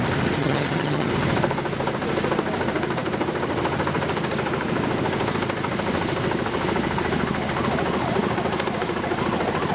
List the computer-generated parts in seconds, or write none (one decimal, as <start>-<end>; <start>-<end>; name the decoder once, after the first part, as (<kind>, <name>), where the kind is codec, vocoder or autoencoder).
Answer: 0.4-1.1 (vocoder, HiFi-GAN)